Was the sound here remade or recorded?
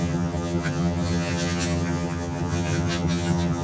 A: remade